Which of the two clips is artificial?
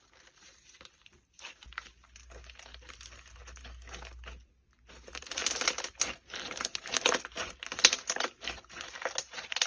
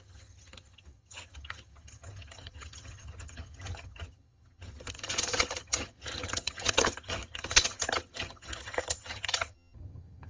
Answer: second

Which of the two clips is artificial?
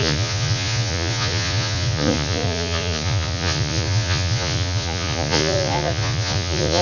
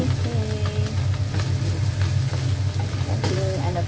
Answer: first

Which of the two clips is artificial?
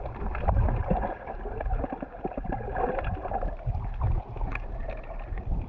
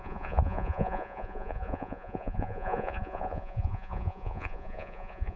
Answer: second